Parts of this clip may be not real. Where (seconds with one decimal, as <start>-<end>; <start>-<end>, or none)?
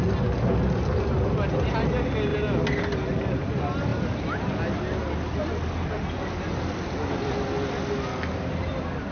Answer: none